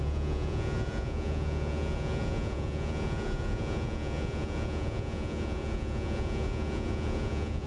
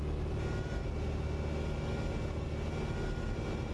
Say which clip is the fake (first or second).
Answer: first